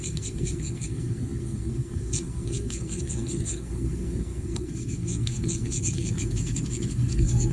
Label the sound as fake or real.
fake